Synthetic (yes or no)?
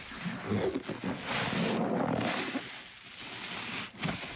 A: no